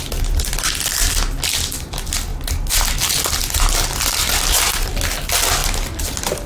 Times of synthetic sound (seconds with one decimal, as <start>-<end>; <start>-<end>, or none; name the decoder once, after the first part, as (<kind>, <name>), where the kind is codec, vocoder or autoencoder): none